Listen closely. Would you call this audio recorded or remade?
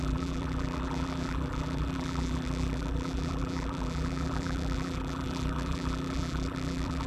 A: remade